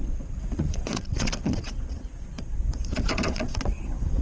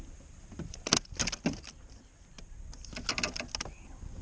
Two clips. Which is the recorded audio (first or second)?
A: second